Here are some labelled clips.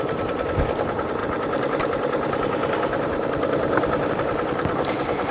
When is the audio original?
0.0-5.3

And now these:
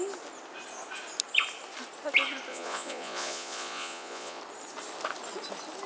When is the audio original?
0.0-2.5; 4.4-5.9

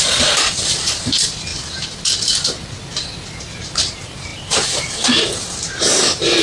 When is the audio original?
1.5-3.4